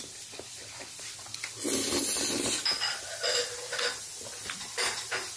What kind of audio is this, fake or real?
real